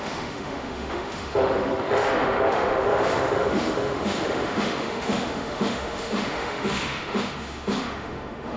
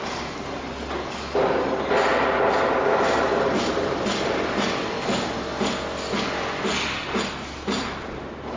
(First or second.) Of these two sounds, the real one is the second